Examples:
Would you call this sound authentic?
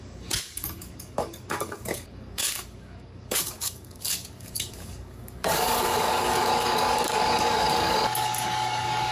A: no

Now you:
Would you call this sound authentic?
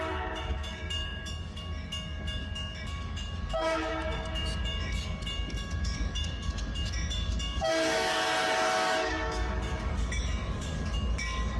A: no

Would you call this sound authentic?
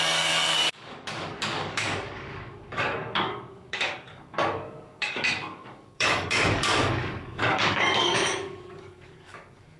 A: no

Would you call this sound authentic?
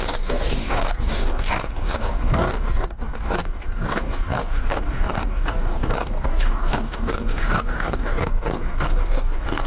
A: no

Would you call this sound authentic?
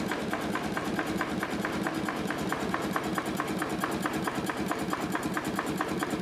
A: yes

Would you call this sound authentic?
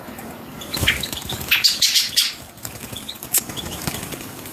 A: no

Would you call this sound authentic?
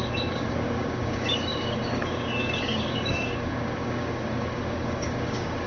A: no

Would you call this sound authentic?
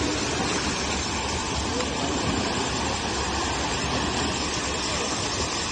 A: yes